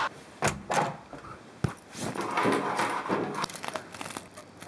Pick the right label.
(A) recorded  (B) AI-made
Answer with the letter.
A